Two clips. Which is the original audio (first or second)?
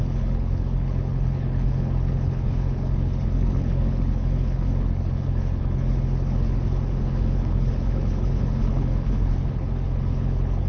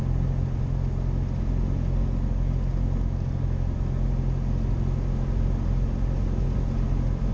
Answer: second